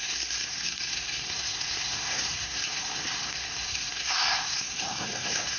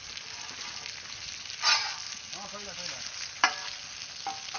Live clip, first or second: second